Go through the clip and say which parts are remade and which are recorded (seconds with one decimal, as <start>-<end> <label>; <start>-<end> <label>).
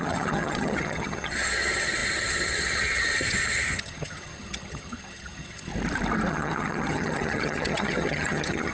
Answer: 0.0-5.7 remade; 5.7-6.3 recorded; 6.3-8.7 remade